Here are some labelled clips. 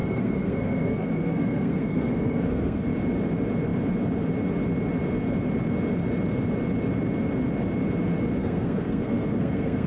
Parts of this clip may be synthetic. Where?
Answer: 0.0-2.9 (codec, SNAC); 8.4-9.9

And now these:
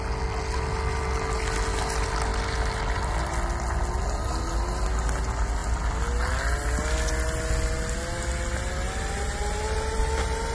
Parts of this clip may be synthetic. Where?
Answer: none

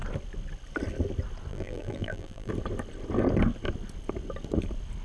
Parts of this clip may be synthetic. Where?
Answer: 1.5-2.5 (vocoder, BigVGAN v2)

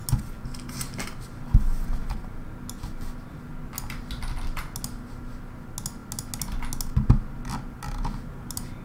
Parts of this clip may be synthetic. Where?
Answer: none

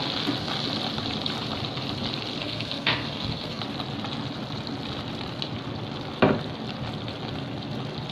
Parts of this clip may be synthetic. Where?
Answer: 2.4-3.6 (codec, SNAC)

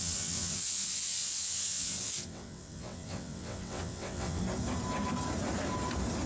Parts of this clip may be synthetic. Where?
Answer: 0.0-4.4 (vocoder, WaveNeXt)

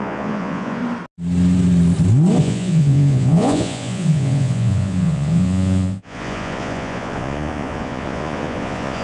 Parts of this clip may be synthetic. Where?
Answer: 0.0-0.8 (vocoder, Vocos); 2.4-9.0

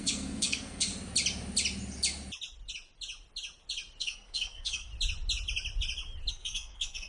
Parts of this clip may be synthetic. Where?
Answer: 0.0-0.9 (codec, SNAC); 4.0-4.9; 6.3-7.1